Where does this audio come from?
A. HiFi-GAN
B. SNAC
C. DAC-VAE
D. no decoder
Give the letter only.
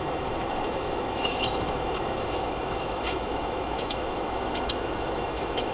C